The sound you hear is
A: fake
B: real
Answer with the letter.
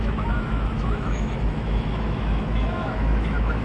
A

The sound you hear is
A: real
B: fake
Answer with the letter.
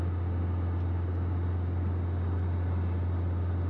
A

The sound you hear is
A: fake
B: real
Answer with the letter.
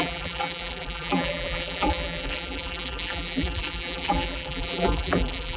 A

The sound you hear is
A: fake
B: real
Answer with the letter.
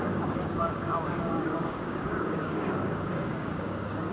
A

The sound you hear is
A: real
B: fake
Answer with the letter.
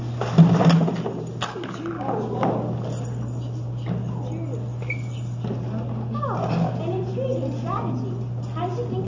A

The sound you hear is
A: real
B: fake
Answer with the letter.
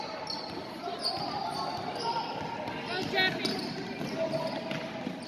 A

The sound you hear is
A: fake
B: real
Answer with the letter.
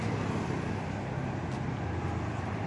B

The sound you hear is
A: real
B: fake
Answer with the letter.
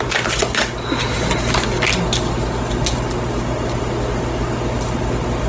A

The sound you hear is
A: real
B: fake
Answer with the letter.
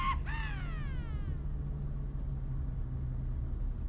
A